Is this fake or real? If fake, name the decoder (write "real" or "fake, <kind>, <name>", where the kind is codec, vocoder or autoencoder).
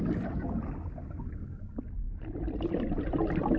real